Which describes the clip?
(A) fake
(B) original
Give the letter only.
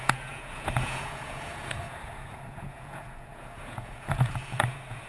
A